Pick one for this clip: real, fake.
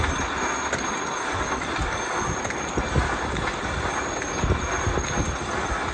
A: real